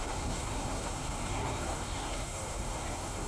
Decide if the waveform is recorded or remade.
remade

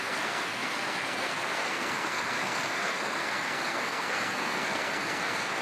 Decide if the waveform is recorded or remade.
remade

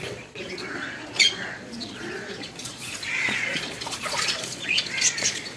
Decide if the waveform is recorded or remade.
remade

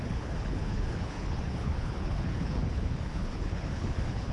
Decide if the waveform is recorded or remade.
remade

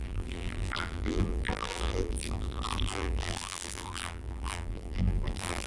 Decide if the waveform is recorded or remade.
remade